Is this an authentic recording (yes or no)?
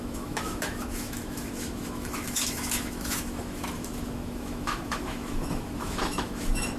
no